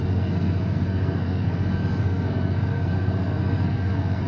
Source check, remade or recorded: remade